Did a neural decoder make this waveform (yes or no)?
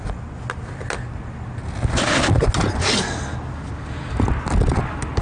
no